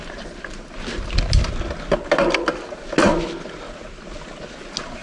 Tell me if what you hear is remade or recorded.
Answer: recorded